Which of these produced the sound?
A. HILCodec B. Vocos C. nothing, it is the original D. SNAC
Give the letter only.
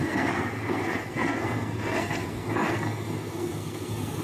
D